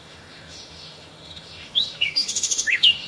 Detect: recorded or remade remade